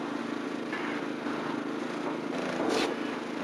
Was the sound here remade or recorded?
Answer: recorded